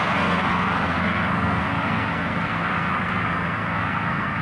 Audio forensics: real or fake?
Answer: fake